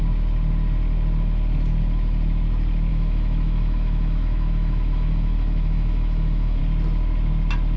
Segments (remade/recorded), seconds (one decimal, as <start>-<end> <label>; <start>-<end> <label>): 0.0-2.9 recorded; 2.9-6.6 remade; 6.6-7.8 recorded